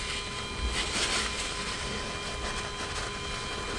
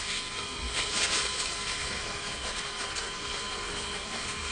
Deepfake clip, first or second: second